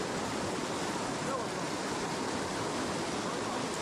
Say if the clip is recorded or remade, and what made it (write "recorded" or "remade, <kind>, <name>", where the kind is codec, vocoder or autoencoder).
recorded